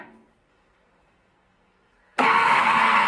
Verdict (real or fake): fake